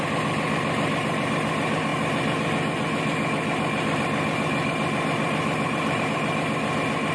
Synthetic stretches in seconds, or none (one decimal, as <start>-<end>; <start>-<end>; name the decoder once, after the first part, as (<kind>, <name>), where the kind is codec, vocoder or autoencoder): none